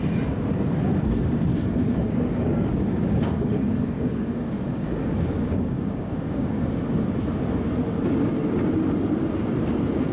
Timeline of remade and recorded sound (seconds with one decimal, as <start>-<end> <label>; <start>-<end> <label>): 0.0-1.5 recorded; 1.5-6.6 remade; 6.6-10.1 recorded